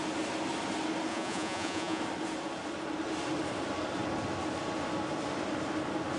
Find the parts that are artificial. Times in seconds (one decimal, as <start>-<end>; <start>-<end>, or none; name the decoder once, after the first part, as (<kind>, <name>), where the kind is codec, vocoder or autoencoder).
1.1-2.0 (vocoder, Vocos)